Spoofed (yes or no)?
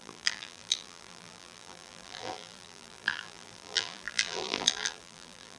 yes